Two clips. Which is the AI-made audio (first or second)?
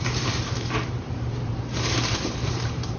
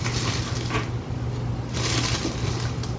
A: first